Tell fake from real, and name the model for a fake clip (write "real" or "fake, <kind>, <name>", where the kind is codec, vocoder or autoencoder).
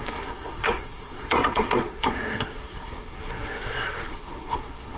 fake, codec, SNAC